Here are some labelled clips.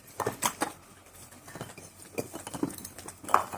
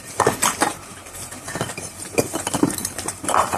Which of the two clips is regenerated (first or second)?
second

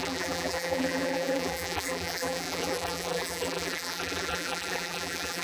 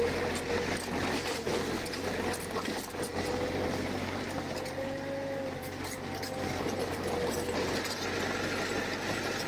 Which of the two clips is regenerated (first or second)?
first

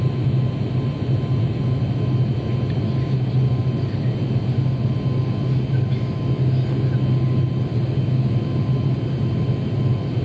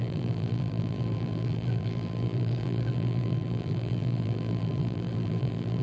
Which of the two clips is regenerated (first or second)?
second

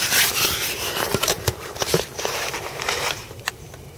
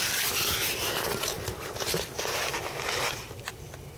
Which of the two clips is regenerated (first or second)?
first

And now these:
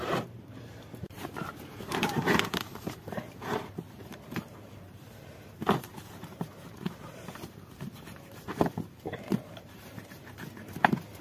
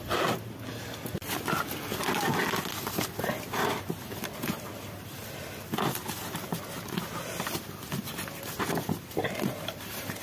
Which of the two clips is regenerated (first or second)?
first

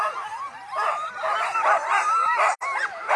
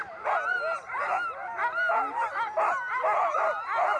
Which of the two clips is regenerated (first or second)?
first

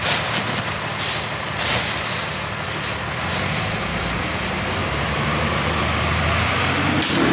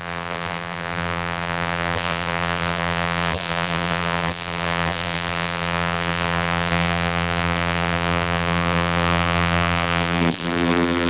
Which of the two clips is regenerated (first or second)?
second